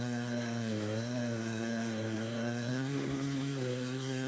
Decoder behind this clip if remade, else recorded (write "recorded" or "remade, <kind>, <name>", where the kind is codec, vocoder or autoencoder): remade, codec, SNAC